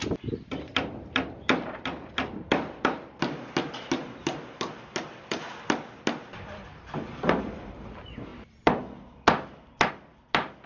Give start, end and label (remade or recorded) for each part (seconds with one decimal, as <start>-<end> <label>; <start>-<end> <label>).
0.0-10.7 recorded